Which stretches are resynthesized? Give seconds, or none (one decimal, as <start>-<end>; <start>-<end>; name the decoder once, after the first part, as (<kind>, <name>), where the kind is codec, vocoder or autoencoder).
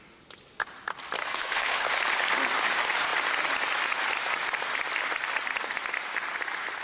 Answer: 1.2-1.9 (codec, SNAC)